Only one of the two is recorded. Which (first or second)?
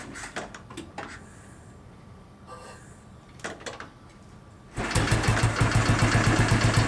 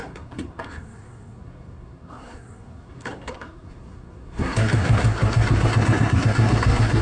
first